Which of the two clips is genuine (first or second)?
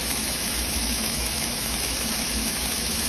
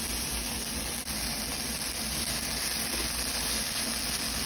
second